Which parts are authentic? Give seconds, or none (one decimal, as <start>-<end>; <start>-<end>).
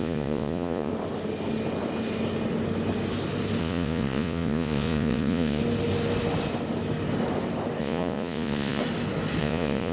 0.9-3.6; 5.6-7.8; 8.8-9.4